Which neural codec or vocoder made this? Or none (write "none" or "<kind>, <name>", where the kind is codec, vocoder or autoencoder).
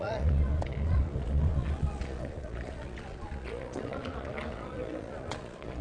vocoder, Vocos